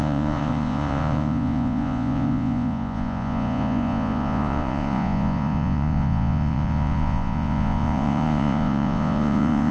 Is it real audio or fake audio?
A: fake